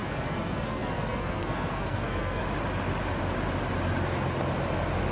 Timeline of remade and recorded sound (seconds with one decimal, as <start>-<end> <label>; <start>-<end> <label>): 0.0-2.4 remade; 2.4-5.1 recorded